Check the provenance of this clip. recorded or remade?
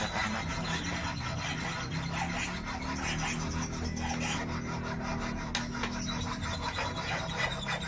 recorded